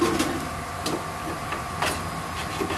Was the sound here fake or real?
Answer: real